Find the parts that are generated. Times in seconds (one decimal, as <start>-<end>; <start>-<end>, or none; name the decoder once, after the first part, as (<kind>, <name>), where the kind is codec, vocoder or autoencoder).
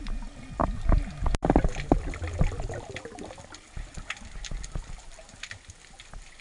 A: none